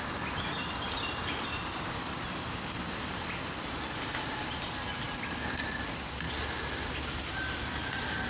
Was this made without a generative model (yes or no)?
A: no